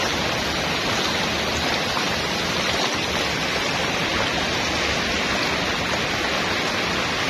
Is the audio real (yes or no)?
yes